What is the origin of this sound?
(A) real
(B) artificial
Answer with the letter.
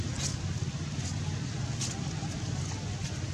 A